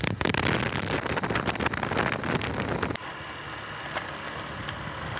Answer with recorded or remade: recorded